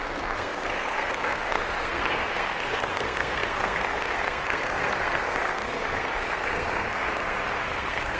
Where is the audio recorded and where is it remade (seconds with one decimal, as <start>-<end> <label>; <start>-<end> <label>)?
0.0-8.2 remade